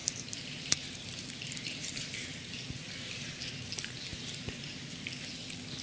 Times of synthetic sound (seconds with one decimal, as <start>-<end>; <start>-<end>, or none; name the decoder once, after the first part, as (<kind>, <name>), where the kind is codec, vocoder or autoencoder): 0.0-3.5 (vocoder, BigVGAN v2); 4.1-4.9